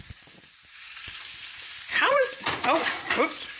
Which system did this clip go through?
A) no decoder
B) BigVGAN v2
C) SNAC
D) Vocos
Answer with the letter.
D